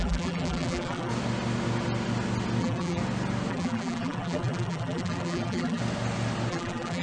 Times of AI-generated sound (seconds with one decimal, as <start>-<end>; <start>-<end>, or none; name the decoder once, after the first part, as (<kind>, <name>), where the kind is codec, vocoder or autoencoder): 0.0-1.1 (vocoder, BigVGAN v2); 2.6-3.0; 3.5-5.8; 6.5-7.0